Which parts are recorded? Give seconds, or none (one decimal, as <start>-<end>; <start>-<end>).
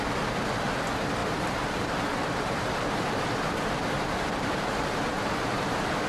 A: 0.0-1.2; 4.9-6.1